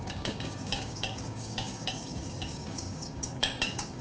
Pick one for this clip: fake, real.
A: fake